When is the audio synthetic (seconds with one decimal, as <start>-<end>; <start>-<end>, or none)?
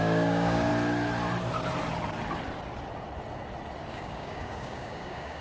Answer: 0.0-0.7; 3.9-5.4